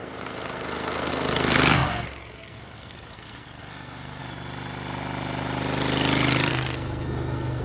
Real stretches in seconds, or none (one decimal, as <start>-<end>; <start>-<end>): 4.2-6.5